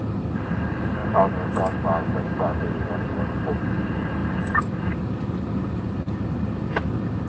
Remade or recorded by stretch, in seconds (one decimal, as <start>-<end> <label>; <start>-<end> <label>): 0.0-7.3 recorded